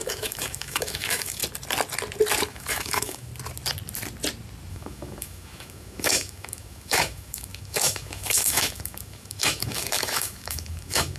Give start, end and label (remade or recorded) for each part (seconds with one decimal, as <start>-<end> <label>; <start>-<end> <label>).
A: 0.0-1.4 remade; 1.4-2.5 recorded; 2.5-3.3 remade; 3.3-4.7 recorded; 4.7-11.2 remade